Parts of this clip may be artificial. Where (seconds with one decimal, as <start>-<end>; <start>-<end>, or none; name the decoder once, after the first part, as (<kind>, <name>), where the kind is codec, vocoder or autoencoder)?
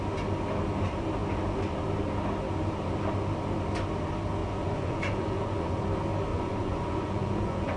4.4-5.8 (vocoder, Vocos); 6.3-7.8